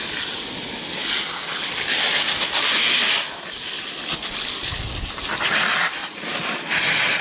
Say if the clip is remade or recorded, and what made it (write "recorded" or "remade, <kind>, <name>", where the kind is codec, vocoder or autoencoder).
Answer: recorded